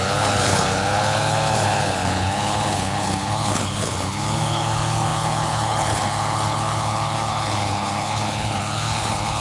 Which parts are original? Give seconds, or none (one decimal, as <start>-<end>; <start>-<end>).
none